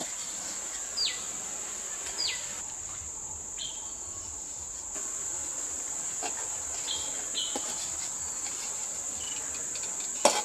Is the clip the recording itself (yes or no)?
yes